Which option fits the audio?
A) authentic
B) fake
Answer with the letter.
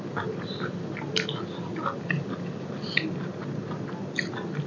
A